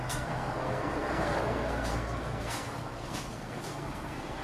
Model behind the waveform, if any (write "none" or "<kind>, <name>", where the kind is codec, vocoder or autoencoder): codec, SNAC